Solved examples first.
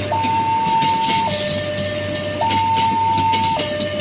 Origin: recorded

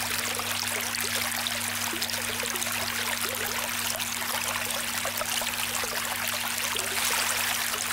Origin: recorded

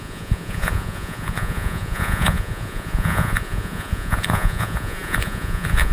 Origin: remade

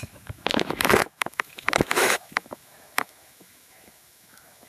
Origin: remade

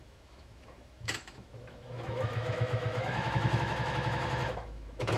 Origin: remade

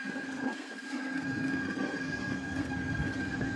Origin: remade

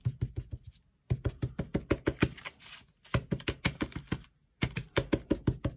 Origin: recorded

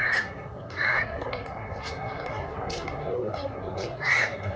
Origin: remade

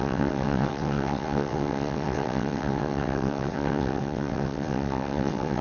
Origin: remade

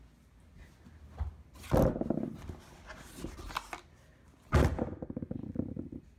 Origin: recorded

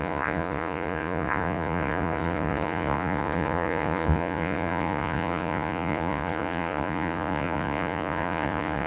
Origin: remade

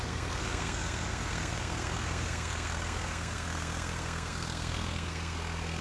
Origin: remade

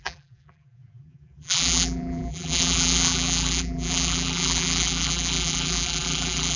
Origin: remade